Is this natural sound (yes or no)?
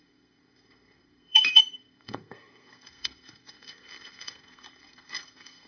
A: no